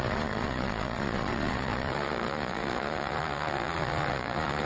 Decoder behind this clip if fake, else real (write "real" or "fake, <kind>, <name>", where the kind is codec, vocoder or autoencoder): fake, vocoder, Vocos